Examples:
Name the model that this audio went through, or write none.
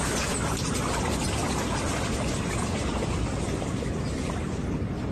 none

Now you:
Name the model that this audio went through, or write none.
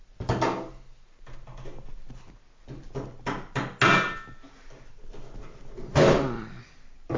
none